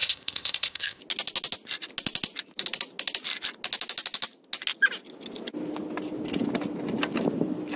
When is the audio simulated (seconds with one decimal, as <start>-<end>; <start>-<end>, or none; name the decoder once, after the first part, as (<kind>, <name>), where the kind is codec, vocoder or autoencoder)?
0.0-1.0 (codec, ZipCodec)